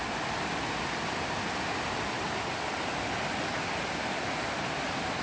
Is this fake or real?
real